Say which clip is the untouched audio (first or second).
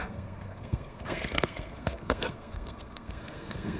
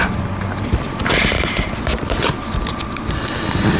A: second